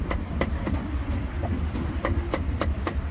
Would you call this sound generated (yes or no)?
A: yes